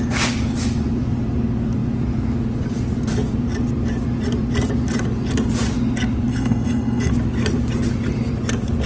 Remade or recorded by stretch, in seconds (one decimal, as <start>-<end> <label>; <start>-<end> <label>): 0.0-6.3 recorded; 6.3-7.1 remade; 7.1-8.9 recorded

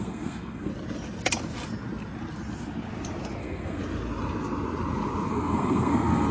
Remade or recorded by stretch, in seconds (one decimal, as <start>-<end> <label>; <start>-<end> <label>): 0.0-0.7 remade; 0.7-3.4 recorded; 3.4-3.8 remade; 3.8-5.3 recorded; 5.3-6.3 remade

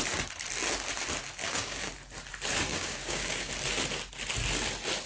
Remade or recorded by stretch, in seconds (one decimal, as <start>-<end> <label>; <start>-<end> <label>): 0.0-1.4 recorded; 1.4-1.9 remade; 1.9-2.7 recorded; 2.7-3.5 remade; 3.5-5.1 recorded

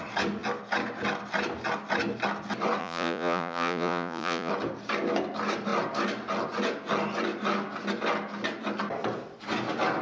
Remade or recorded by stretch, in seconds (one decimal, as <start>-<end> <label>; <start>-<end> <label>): 0.0-2.8 recorded; 2.8-4.5 remade; 4.5-10.0 recorded

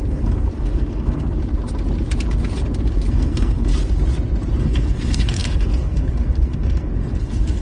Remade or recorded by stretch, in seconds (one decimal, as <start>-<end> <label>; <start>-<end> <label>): 0.0-1.4 remade; 1.4-3.1 recorded; 3.1-3.7 remade; 3.7-4.6 recorded; 4.6-7.6 remade

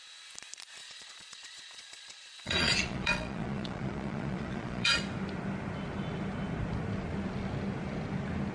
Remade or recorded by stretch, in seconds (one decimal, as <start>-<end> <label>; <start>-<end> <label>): 0.0-0.8 recorded; 0.8-5.0 remade; 5.0-8.5 recorded

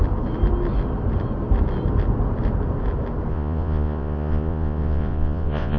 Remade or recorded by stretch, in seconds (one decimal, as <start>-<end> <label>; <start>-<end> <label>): 0.0-3.3 recorded; 3.3-5.8 remade

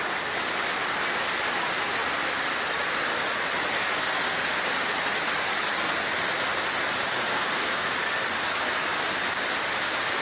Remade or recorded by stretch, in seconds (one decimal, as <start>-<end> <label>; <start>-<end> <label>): 0.0-3.8 recorded; 3.8-4.4 remade; 4.4-7.3 recorded; 7.3-7.9 remade; 7.9-10.2 recorded